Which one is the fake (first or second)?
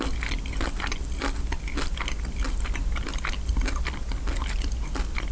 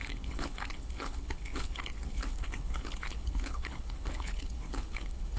second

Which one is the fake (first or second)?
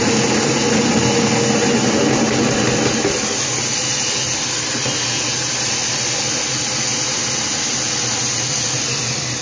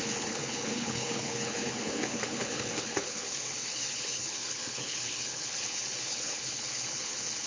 second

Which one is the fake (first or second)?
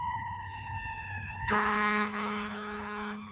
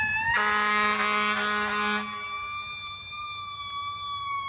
first